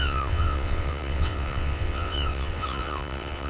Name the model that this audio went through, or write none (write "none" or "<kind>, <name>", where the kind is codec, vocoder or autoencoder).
vocoder, WaveNeXt